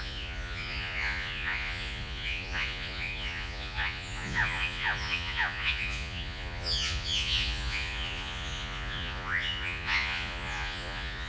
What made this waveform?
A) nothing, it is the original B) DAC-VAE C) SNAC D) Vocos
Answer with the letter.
D